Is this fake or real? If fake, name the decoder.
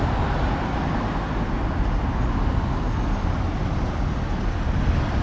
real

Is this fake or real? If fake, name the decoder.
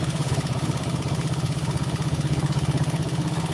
fake, codec, HILCodec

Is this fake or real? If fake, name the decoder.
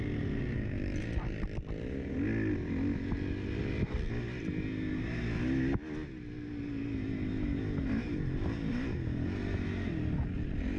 real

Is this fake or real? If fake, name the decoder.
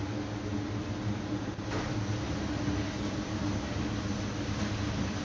real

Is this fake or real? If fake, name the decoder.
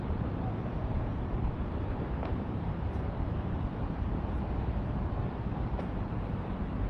fake, vocoder, BigVGAN v2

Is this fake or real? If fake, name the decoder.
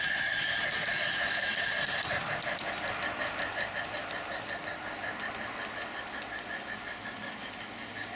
real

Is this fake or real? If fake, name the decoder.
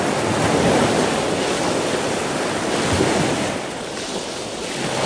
real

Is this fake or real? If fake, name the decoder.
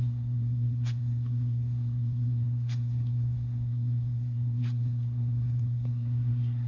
fake, codec, SNAC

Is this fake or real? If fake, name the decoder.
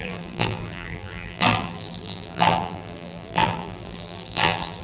fake, vocoder, BigVGAN v2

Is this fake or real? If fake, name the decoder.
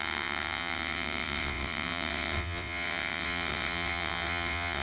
fake, vocoder, WaveNeXt